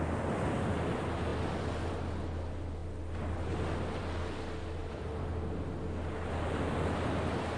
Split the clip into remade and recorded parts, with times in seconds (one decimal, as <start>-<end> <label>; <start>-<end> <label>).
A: 0.0-4.8 recorded; 4.8-5.3 remade; 5.3-7.6 recorded